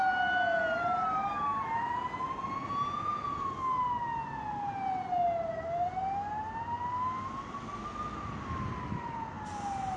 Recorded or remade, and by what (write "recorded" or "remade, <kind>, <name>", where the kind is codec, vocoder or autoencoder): recorded